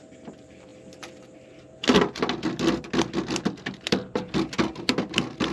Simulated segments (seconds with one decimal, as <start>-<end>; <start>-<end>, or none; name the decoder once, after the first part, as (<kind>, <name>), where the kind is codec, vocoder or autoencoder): none